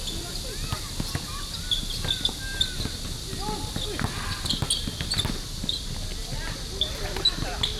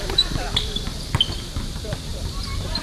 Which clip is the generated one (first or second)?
second